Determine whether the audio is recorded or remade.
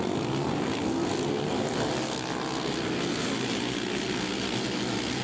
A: recorded